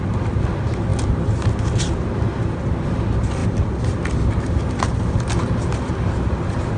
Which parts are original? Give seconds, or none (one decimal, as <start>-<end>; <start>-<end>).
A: 0.0-6.8